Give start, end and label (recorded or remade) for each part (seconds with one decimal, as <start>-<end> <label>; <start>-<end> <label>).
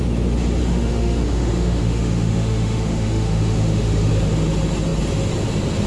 0.0-0.6 recorded; 0.6-4.1 remade; 4.1-5.9 recorded